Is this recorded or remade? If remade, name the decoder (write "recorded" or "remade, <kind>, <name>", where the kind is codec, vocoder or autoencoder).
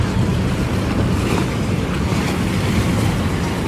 recorded